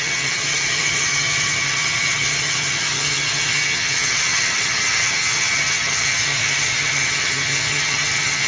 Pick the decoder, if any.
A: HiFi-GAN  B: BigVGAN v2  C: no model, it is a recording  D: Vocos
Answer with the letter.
A